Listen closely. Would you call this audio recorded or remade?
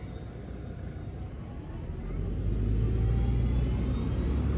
recorded